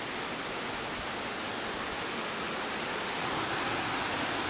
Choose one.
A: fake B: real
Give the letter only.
B